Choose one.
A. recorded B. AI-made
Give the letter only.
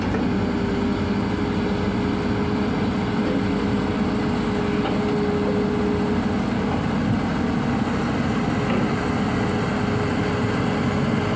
A